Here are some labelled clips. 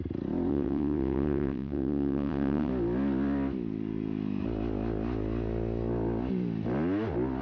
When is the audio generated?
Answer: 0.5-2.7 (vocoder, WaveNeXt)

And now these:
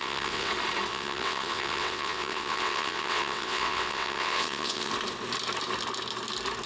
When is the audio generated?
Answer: 0.0-0.5 (vocoder, WaveNeXt); 0.9-4.9

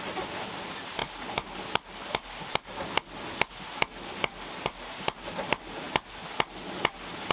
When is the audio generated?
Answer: none